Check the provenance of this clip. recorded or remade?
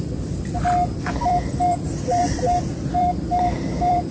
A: remade